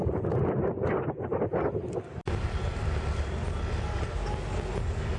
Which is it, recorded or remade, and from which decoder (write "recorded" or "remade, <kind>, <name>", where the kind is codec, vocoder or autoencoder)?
recorded